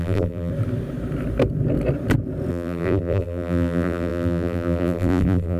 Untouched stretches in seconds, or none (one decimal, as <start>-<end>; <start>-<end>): 0.5-2.5